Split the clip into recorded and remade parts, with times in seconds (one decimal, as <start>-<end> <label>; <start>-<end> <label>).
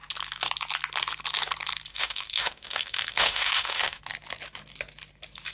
0.0-1.9 recorded; 1.9-4.0 remade; 4.0-5.5 recorded